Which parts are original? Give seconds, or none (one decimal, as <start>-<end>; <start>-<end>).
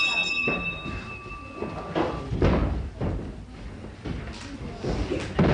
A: 0.0-0.4; 1.3-2.6; 3.2-5.5